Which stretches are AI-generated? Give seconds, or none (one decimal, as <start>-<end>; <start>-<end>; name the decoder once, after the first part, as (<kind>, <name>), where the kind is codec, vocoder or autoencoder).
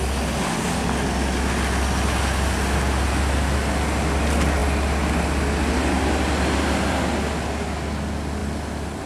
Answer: none